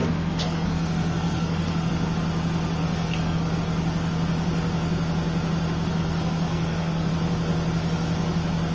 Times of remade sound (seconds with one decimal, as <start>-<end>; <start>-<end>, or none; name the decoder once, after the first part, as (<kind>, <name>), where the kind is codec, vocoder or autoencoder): 0.0-1.9 (codec, SNAC); 2.8-3.6; 5.9-7.1

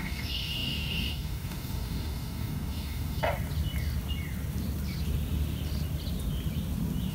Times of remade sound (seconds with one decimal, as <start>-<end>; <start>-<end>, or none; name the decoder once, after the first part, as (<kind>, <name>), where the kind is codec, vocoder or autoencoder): 0.0-3.2 (codec, DAC)

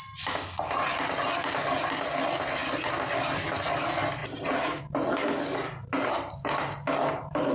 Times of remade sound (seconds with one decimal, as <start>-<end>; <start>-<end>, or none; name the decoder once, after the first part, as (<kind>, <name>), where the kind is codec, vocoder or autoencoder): 4.2-4.8 (vocoder, BigVGAN v2)

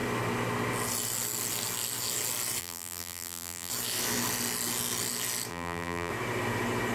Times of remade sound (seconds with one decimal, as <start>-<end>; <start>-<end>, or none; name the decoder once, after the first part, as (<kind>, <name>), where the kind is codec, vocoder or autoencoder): 2.6-3.7 (vocoder, BigVGAN v2); 5.5-6.1

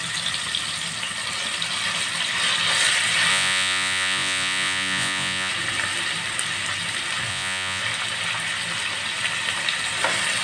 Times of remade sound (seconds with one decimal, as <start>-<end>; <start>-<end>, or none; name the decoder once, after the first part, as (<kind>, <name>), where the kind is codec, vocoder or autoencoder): 3.3-5.5 (vocoder, Vocos); 7.3-7.8

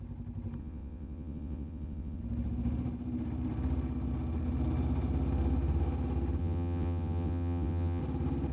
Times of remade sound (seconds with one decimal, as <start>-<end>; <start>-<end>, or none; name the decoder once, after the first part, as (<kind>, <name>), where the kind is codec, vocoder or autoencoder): 0.6-2.2 (vocoder, WaveNeXt); 6.4-8.0